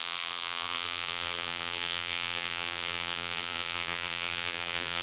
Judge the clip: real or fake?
fake